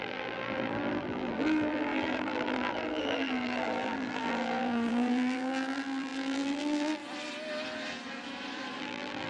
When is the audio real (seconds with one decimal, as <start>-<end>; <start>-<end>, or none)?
7.0-8.8